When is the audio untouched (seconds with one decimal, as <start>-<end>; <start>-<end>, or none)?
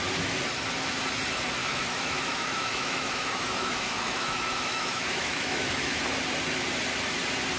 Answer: 0.0-1.6; 6.0-7.6